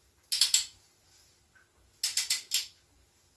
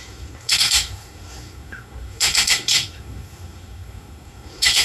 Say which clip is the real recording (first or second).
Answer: first